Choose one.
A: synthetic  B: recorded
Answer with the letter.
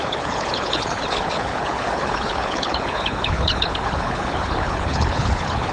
A